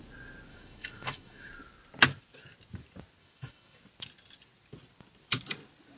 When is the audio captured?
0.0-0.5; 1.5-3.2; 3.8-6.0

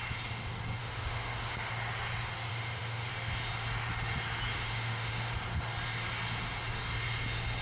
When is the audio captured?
0.0-0.8; 1.7-2.5; 3.1-4.5; 5.3-7.6

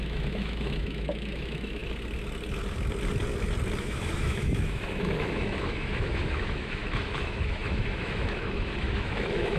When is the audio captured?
1.8-3.8